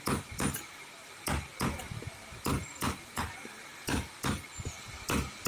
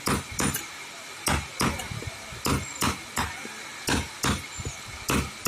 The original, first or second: second